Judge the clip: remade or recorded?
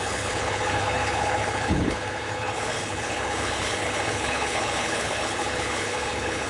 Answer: remade